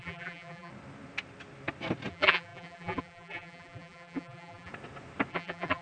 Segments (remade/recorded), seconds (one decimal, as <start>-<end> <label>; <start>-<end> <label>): 0.0-0.7 remade; 0.7-2.1 recorded; 2.1-4.7 remade; 4.7-5.3 recorded; 5.3-5.8 remade